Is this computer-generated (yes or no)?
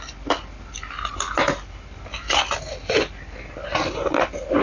no